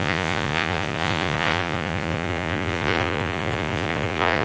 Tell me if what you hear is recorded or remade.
remade